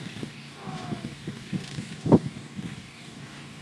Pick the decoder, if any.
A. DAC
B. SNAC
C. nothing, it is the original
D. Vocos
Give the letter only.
A